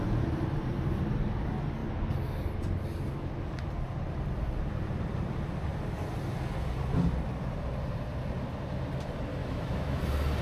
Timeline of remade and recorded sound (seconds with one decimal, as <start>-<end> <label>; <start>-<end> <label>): 0.0-9.4 recorded; 9.4-10.0 remade; 10.0-10.4 recorded